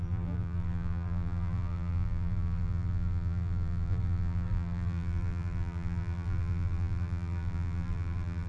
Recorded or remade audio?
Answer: remade